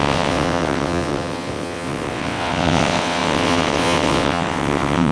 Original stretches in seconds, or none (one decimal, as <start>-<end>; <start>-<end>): none